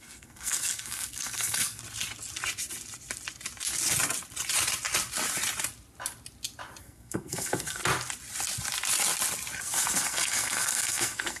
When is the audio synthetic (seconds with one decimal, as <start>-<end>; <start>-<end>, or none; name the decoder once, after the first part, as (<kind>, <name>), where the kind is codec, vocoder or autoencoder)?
0.0-1.8 (codec, SNAC); 6.8-7.8; 9.6-11.4